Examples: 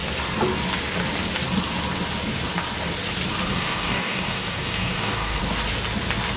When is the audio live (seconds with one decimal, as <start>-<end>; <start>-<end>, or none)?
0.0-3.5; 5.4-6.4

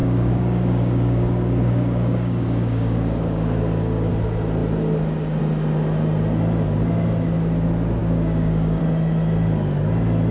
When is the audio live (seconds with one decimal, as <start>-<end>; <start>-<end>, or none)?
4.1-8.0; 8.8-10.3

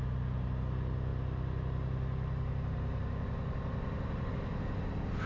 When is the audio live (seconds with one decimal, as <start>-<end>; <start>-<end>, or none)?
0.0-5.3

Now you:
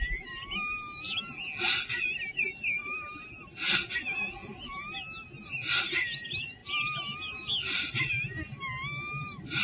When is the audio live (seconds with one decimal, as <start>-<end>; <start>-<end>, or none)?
0.0-9.6